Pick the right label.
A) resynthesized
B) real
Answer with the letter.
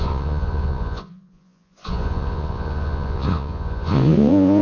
A